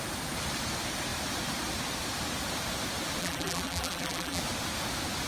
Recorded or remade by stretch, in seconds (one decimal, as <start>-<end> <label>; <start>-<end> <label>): 0.0-3.2 recorded; 3.2-4.4 remade; 4.4-5.3 recorded